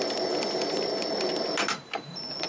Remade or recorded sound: recorded